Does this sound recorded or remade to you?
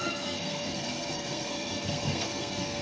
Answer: remade